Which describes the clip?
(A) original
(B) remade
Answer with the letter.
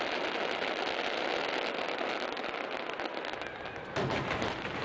A